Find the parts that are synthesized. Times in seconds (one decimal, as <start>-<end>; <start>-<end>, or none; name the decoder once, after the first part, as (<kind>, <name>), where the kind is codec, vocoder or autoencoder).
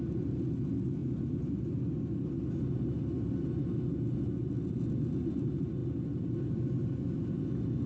none